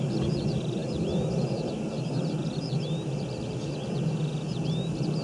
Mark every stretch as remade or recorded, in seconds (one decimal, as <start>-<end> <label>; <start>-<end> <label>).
0.0-5.2 recorded